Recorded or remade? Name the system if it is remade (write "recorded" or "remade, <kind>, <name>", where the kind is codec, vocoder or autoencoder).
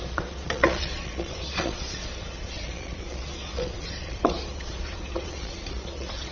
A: remade, vocoder, Vocos